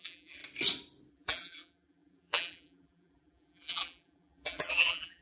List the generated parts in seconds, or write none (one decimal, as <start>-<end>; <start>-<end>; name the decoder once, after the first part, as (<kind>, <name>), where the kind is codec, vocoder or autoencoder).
0.0-0.4 (vocoder, BigVGAN v2); 1.1-5.2